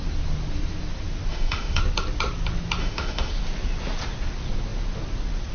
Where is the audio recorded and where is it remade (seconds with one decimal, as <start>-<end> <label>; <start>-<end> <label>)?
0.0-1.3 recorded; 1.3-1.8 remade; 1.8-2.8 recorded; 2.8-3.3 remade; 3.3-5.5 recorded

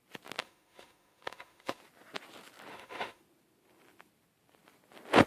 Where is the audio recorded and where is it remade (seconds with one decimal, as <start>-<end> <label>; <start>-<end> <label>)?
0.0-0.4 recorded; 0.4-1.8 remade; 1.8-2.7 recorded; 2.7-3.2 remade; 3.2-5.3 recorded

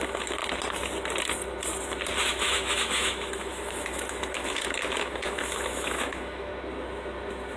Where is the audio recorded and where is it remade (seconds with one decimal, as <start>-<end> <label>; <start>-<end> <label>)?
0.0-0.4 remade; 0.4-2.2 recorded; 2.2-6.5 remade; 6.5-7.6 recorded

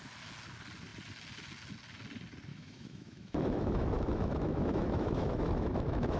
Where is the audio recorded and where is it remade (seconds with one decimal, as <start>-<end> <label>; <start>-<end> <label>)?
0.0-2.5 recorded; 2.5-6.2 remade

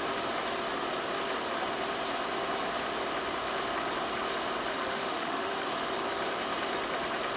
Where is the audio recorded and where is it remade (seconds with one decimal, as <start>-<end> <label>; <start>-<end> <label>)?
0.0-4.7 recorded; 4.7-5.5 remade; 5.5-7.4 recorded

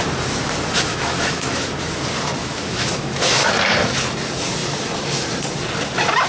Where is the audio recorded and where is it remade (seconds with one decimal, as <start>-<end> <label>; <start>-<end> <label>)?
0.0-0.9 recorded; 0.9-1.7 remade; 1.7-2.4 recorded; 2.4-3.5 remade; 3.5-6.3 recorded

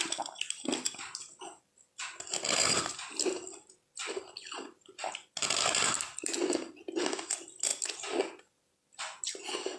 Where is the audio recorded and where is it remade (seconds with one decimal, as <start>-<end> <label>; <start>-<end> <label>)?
0.0-9.8 recorded